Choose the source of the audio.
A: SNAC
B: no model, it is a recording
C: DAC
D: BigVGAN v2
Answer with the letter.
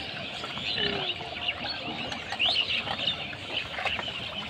B